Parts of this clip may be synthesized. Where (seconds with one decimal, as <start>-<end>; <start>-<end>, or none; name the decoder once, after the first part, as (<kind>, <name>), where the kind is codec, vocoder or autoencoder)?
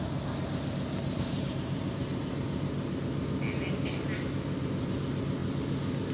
1.0-1.8 (vocoder, BigVGAN v2)